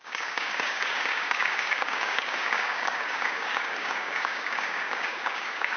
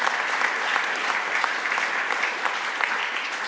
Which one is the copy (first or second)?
first